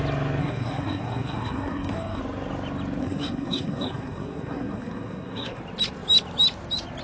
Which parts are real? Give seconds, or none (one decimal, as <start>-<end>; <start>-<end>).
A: 0.0-0.4; 2.2-3.0; 5.6-7.0